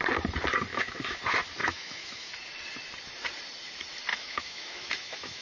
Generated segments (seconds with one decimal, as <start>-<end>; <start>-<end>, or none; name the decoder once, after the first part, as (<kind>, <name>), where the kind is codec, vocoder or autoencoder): 0.7-1.2 (autoencoder, DAC-VAE); 1.6-2.3; 4.1-5.4